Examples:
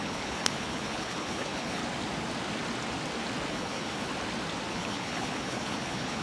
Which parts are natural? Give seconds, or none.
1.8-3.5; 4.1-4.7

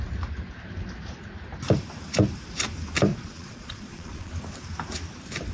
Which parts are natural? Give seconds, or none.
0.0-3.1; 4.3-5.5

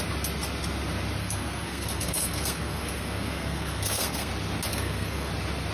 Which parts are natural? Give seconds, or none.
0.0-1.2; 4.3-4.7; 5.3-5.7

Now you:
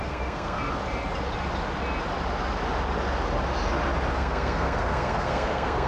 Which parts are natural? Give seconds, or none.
0.6-4.1